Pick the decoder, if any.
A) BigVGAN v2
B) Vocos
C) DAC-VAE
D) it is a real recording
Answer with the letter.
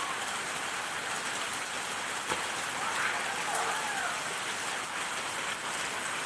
D